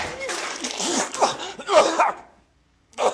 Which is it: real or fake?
fake